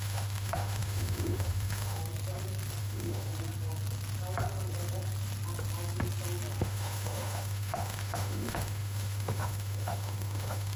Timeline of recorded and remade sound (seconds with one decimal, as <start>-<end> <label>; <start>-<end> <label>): 0.0-2.0 remade; 2.0-2.8 recorded; 2.8-3.3 remade; 3.3-6.6 recorded; 6.6-10.8 remade